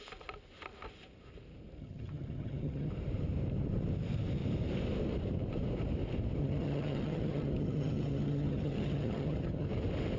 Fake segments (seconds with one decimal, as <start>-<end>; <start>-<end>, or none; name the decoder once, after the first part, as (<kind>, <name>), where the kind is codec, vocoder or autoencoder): 1.8-2.9 (vocoder, HiFi-GAN); 6.4-9.7